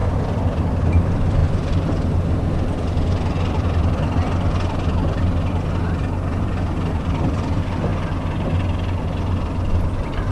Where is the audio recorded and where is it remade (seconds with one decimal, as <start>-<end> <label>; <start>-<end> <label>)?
0.0-7.9 remade; 7.9-10.3 recorded